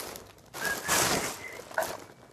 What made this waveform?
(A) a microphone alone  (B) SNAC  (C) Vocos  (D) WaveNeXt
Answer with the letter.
A